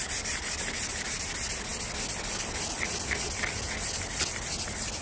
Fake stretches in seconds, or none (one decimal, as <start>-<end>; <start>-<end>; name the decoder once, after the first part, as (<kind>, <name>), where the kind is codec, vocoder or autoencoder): none